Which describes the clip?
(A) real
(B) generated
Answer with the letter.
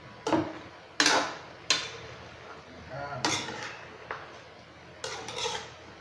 A